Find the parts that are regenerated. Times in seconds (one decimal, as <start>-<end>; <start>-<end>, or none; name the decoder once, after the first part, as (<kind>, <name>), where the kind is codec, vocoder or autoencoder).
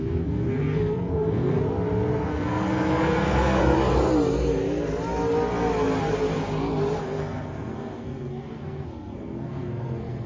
0.0-1.6 (codec, SNAC); 2.3-3.6; 7.0-10.3